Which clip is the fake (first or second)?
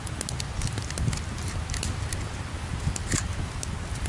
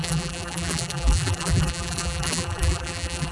second